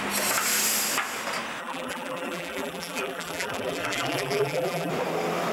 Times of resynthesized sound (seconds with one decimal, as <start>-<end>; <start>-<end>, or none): 1.6-4.9